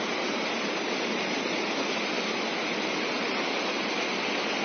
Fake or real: real